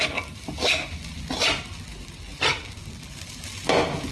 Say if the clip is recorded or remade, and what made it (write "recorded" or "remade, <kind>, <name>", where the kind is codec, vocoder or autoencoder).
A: recorded